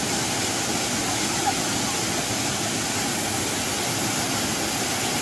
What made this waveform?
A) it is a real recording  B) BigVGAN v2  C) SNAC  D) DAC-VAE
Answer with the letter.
A